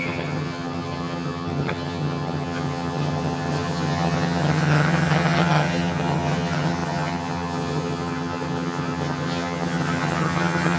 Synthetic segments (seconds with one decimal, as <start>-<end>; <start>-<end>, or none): 0.0-10.8